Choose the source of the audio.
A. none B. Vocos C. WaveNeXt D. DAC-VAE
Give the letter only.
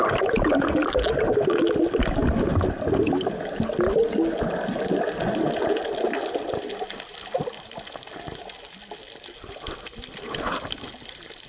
A